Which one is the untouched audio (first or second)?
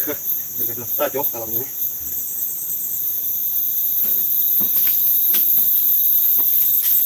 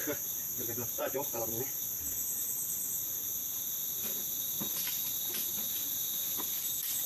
first